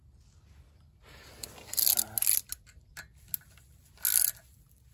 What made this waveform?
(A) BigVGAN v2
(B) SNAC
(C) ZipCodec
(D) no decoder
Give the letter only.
D